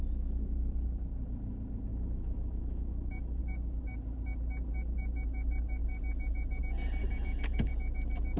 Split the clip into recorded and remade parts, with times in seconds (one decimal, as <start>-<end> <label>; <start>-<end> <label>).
0.0-1.9 recorded; 1.9-3.4 remade; 3.4-7.0 recorded; 7.0-7.7 remade; 7.7-8.4 recorded